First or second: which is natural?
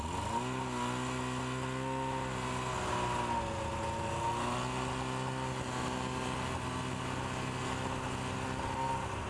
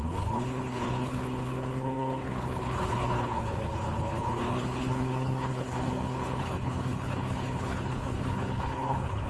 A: first